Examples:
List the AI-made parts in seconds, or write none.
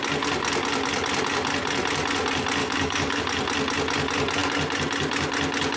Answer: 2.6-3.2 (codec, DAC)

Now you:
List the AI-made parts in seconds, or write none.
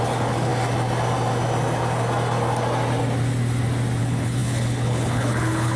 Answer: 0.0-0.5 (codec, HILCodec); 4.0-5.8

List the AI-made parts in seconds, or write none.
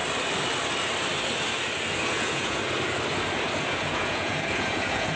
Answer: 2.0-2.6 (vocoder, Vocos); 3.6-5.2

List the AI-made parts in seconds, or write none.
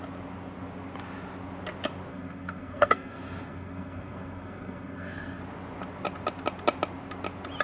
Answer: 2.1-5.4 (codec, SNAC)